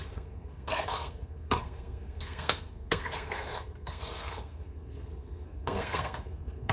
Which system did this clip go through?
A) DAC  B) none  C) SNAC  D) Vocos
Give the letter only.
C